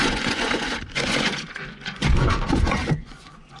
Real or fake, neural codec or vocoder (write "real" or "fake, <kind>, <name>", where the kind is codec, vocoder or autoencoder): fake, vocoder, Vocos